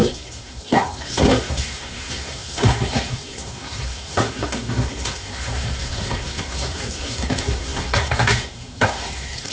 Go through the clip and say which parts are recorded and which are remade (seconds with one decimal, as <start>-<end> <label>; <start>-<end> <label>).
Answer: 0.0-9.5 remade